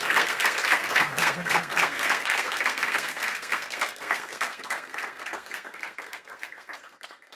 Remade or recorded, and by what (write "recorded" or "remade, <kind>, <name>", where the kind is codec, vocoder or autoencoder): remade, codec, SNAC